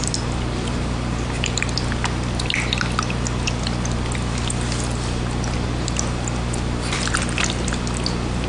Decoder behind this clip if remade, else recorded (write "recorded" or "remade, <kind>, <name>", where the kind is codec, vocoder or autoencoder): recorded